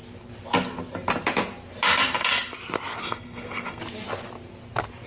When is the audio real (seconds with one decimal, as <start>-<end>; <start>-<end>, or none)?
0.0-3.0; 3.8-5.1